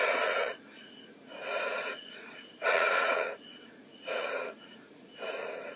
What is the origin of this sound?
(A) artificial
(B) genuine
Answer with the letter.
A